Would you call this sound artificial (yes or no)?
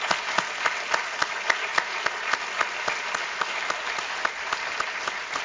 no